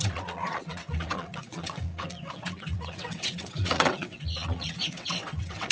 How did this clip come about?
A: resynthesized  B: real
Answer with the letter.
A